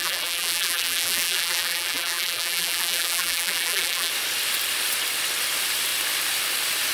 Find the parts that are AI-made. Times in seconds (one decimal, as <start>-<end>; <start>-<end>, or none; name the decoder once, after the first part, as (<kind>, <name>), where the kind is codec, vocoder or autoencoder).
0.0-4.1 (vocoder, BigVGAN v2)